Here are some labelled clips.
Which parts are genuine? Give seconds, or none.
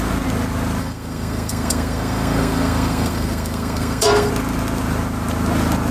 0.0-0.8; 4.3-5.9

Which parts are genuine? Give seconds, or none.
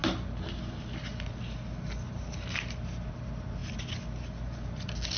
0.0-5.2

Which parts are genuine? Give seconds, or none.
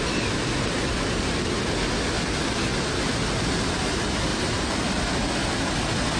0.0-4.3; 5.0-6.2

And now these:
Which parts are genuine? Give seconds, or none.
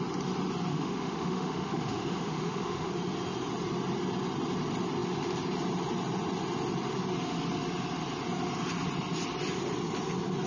0.0-0.7; 2.9-10.5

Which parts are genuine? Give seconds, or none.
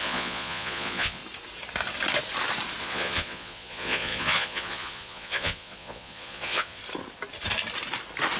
1.2-2.8; 6.8-8.4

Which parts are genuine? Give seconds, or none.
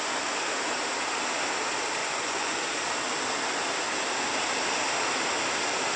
0.0-2.0; 2.6-6.0